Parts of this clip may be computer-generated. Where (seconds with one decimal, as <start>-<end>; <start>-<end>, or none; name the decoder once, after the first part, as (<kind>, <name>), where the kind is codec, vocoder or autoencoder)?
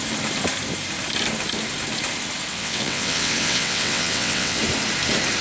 2.5-4.6 (vocoder, WaveNeXt)